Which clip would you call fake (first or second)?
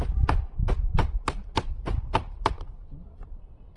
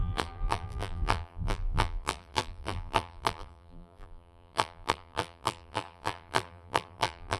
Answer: second